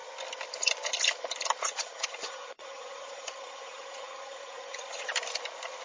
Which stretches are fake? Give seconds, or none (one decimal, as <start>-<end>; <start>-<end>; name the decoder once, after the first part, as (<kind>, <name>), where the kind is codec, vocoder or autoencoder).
1.6-5.1 (vocoder, HiFi-GAN)